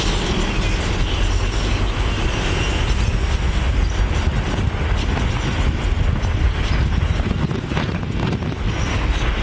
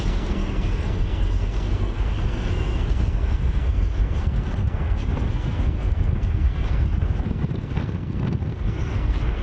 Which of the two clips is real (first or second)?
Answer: first